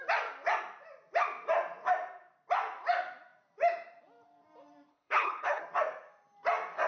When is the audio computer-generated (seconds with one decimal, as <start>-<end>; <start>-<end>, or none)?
4.9-5.6